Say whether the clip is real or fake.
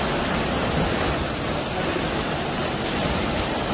real